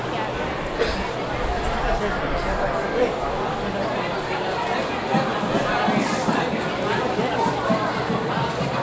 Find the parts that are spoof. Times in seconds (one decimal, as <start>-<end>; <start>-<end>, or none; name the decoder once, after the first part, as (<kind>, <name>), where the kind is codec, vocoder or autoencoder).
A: none